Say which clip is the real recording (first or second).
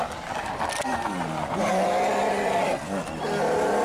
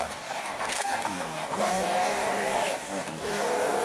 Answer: first